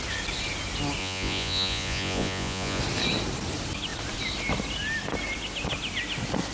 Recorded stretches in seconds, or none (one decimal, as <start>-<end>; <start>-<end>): 0.0-1.0; 2.8-6.5